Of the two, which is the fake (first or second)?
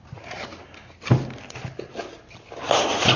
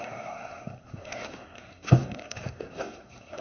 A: second